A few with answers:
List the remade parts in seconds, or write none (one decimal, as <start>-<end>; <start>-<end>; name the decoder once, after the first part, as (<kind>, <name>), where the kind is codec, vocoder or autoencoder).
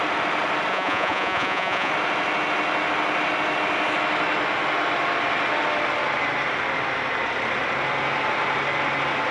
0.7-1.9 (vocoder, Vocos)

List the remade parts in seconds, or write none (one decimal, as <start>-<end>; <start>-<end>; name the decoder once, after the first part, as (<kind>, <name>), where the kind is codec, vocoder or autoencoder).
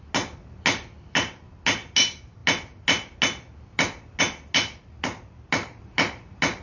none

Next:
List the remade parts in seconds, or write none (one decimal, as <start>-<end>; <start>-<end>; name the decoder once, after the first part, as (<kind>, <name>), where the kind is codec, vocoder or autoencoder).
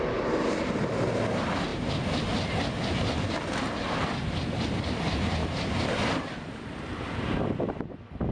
none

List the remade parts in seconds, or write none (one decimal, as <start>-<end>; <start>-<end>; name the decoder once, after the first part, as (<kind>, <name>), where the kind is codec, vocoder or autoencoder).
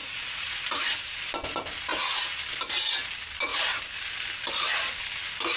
0.0-0.8 (vocoder, Vocos)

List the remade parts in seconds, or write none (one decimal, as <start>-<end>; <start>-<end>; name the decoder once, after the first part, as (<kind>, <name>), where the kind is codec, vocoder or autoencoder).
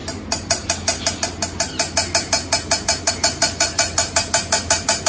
none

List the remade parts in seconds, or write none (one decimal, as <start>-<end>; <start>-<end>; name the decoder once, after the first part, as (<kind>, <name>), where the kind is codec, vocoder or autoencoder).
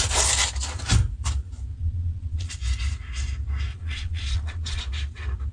1.7-2.5 (vocoder, Vocos); 3.7-4.8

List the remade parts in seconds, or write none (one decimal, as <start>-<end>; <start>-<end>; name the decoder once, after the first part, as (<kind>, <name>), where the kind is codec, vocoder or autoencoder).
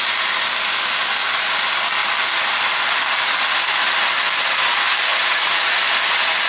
5.1-5.8 (vocoder, Vocos)